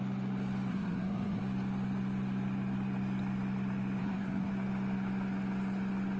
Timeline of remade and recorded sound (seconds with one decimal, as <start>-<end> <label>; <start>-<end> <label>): 0.0-0.7 recorded; 0.7-1.4 remade; 1.4-4.0 recorded; 4.0-4.5 remade; 4.5-6.2 recorded